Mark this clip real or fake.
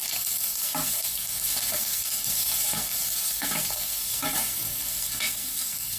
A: fake